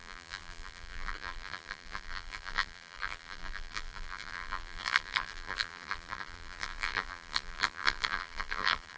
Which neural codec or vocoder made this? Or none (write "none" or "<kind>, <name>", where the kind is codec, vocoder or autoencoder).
vocoder, BigVGAN v2